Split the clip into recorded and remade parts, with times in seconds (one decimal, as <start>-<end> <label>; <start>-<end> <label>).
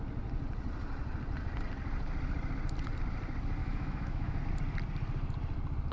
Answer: 0.0-3.6 recorded; 3.6-4.4 remade; 4.4-5.9 recorded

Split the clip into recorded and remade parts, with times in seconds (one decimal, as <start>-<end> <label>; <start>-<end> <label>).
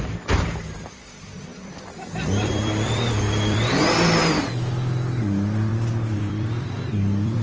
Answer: 0.0-1.5 recorded; 1.5-4.4 remade; 4.4-5.7 recorded; 5.7-7.4 remade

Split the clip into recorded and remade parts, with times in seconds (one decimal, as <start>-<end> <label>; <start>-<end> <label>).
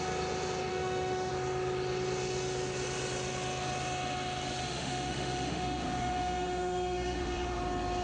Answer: 0.0-0.7 recorded; 0.7-1.3 remade; 1.3-4.6 recorded; 4.6-7.6 remade; 7.6-8.0 recorded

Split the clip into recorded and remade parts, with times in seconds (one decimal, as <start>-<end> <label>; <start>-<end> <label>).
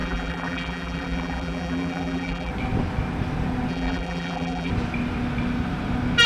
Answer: 0.0-2.5 remade; 2.5-3.7 recorded; 3.7-4.7 remade; 4.7-6.3 recorded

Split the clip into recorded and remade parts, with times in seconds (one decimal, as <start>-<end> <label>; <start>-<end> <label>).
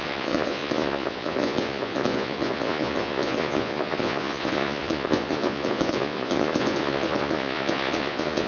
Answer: 0.0-8.5 remade